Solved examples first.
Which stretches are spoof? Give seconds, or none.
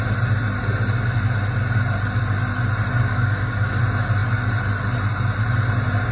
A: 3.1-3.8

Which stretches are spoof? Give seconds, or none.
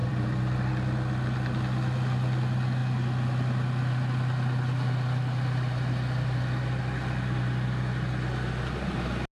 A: 0.0-0.7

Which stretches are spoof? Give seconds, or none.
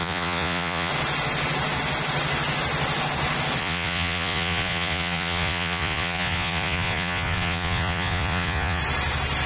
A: 0.0-0.9; 3.6-8.8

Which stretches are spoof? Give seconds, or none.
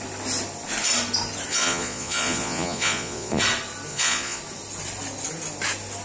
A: 1.5-3.4; 3.9-4.4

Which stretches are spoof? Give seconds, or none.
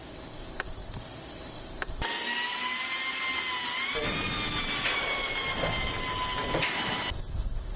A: none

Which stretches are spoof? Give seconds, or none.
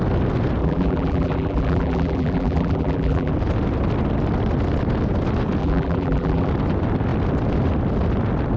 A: 0.6-3.3; 5.6-6.5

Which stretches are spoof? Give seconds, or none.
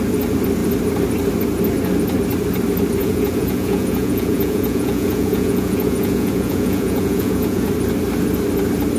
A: 3.0-7.7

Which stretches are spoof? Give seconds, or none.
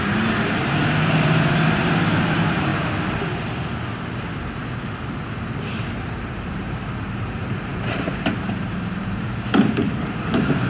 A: 0.0-2.7; 5.9-10.7